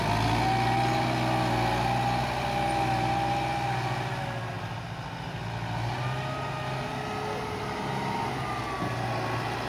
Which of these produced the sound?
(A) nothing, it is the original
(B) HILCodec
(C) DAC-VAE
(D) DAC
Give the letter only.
A